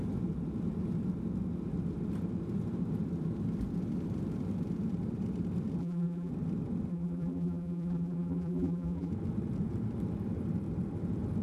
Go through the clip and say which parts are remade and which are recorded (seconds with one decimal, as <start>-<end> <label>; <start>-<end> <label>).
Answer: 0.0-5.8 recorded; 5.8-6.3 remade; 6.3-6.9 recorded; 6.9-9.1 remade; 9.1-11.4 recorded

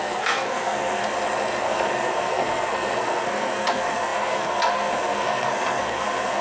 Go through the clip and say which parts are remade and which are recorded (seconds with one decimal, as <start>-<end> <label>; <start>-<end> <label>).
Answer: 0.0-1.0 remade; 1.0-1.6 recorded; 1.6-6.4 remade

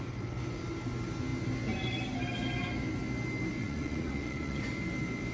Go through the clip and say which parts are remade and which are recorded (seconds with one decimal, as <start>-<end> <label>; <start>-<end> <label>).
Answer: 0.0-3.6 recorded; 3.6-4.6 remade; 4.6-5.3 recorded

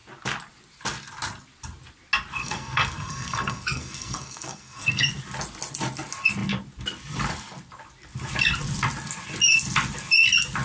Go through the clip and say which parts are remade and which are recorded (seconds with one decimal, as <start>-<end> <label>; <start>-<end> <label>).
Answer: 0.0-2.4 recorded; 2.4-5.0 remade; 5.0-10.6 recorded

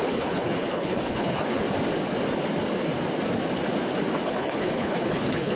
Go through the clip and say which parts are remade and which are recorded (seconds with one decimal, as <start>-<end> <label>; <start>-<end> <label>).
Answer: 0.0-1.6 remade; 1.6-4.2 recorded; 4.2-5.6 remade